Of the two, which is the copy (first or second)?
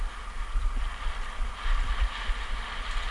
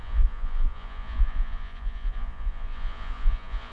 second